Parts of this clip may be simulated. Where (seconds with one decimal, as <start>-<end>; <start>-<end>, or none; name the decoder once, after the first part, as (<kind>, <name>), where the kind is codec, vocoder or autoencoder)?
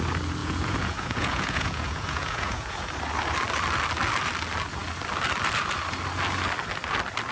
0.4-2.9 (vocoder, Vocos)